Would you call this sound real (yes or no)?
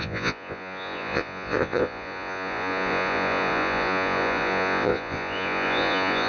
no